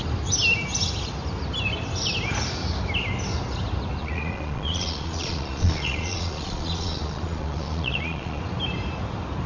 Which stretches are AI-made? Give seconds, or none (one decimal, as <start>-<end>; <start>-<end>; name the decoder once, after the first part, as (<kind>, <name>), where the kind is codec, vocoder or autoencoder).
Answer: 4.0-8.4 (vocoder, Vocos)